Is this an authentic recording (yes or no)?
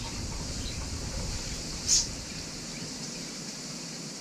no